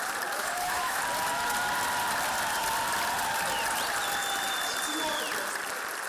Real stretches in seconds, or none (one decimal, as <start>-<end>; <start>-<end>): 0.0-0.4; 1.0-6.1